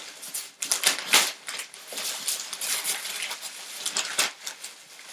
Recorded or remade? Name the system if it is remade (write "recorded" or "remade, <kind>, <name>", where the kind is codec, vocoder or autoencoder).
recorded